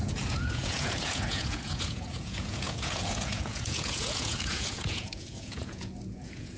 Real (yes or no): no